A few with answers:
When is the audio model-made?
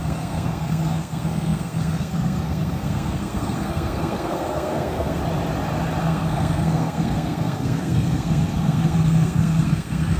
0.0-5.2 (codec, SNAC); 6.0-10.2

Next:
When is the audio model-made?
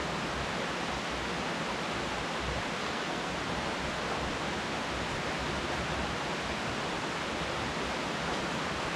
2.8-3.3 (codec, SNAC)